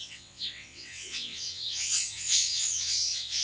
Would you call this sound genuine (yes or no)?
no